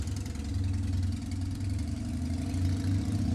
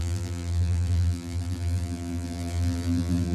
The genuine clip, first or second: first